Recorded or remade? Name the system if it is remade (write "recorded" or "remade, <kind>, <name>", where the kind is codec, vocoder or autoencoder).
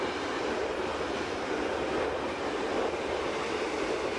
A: recorded